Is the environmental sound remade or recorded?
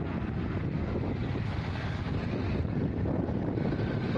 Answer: recorded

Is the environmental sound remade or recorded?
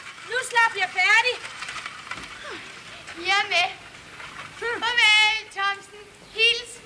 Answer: recorded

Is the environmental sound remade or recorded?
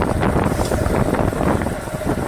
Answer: recorded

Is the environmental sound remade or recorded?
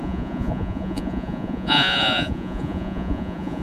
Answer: remade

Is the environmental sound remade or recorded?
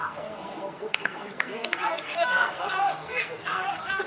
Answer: remade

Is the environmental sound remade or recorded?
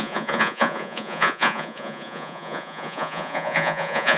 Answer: remade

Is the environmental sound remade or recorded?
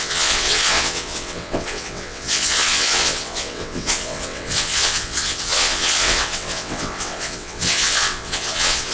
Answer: remade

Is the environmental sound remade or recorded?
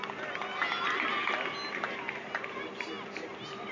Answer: recorded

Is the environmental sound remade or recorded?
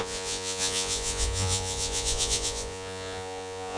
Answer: remade